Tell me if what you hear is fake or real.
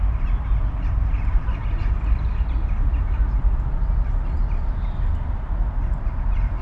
real